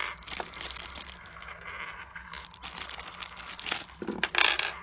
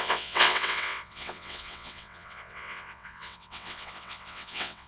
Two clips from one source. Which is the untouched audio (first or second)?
first